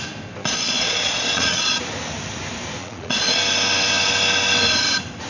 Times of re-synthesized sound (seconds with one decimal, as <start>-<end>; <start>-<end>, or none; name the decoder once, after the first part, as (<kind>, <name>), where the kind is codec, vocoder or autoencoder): 0.4-1.8 (vocoder, Vocos); 2.8-3.4